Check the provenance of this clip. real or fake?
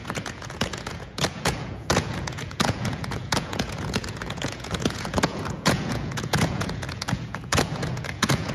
fake